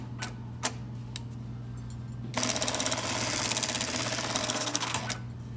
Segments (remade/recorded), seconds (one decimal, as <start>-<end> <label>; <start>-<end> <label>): 0.0-4.4 recorded; 4.4-5.0 remade; 5.0-5.6 recorded